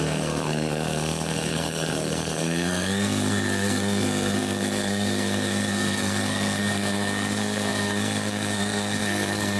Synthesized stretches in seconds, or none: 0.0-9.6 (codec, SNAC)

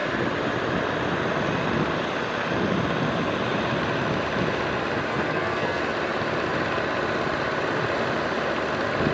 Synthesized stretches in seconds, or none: 5.1-5.8 (codec, SNAC)

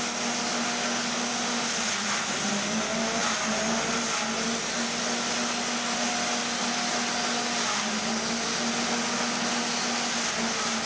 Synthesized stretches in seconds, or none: none

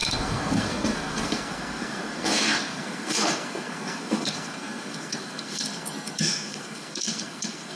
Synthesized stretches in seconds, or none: 0.0-7.8 (codec, SNAC)

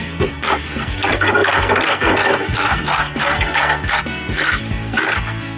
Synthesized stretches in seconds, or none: 0.0-5.6 (codec, SNAC)

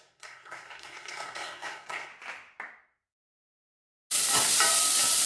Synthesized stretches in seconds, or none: 0.0-2.1 (codec, SNAC)